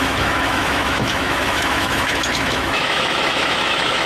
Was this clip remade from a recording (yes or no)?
yes